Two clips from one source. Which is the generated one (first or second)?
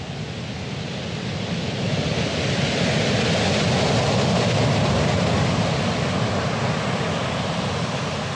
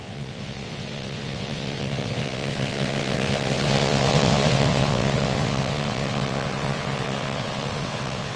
second